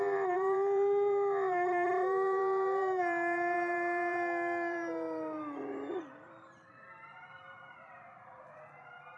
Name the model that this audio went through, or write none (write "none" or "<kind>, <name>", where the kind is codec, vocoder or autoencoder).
vocoder, BigVGAN v2